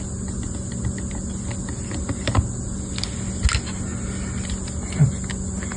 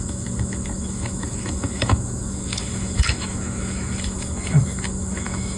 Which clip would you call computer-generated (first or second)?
second